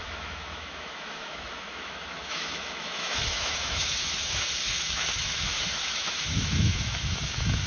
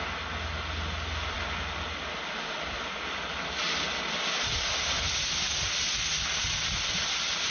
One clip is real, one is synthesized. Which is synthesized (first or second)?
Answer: first